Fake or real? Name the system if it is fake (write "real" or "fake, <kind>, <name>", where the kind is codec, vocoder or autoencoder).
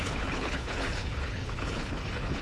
fake, codec, HILCodec